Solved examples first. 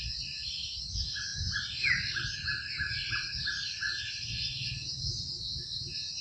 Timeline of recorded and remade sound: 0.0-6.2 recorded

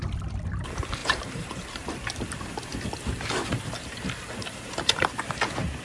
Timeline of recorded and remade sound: 0.0-1.0 recorded; 1.0-1.9 remade; 1.9-5.8 recorded